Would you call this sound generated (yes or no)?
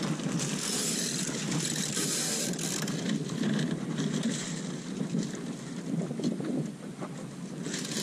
yes